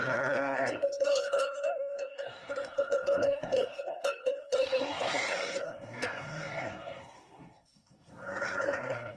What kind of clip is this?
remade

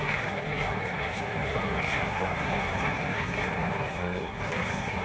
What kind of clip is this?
remade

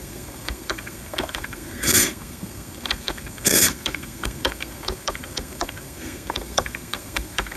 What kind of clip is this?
remade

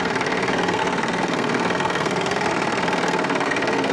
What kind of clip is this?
remade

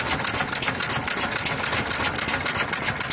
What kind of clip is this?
recorded